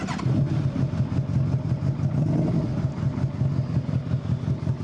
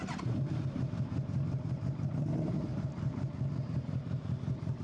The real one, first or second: first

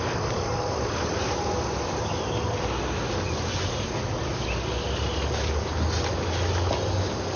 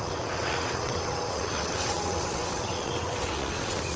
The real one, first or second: first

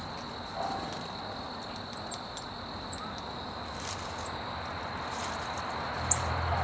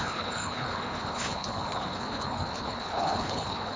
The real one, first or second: first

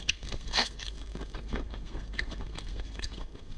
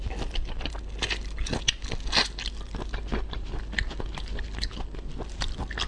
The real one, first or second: second